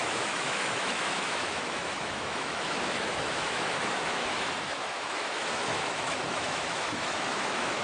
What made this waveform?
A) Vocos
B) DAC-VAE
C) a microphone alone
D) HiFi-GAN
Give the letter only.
B